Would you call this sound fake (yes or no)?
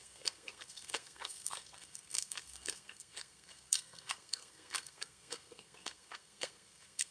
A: yes